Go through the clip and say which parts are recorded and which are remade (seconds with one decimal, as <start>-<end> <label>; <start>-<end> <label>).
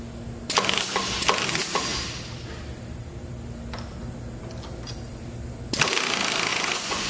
0.0-6.5 recorded; 6.5-7.1 remade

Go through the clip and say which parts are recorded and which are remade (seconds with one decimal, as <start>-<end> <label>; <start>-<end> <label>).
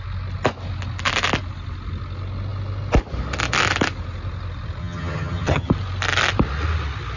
0.0-4.8 recorded; 4.8-5.7 remade; 5.7-7.2 recorded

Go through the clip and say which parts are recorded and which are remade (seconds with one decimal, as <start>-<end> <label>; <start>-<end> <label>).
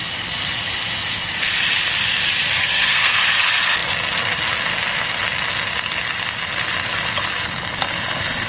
0.0-2.6 recorded; 2.6-3.2 remade; 3.2-8.5 recorded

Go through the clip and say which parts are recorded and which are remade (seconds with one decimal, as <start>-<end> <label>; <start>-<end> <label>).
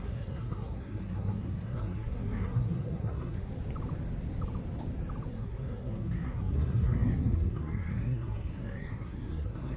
0.0-3.5 remade; 3.5-5.3 recorded; 5.3-9.8 remade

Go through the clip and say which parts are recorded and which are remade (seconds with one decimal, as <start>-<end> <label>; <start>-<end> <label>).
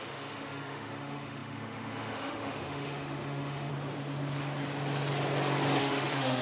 0.0-3.7 remade; 3.7-5.8 recorded; 5.8-6.4 remade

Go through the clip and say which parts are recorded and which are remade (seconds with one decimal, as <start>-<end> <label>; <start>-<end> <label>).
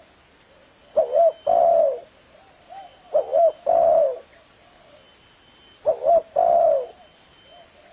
0.0-7.9 recorded